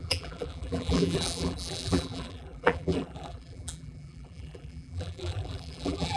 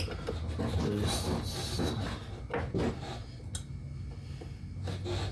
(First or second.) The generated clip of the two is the first